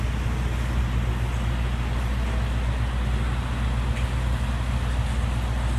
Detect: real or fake real